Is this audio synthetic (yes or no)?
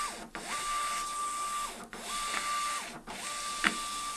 no